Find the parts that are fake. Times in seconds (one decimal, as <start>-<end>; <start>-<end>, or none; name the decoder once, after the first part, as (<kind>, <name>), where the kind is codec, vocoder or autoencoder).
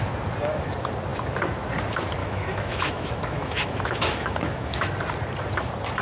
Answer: 2.2-4.9 (autoencoder, DAC-VAE)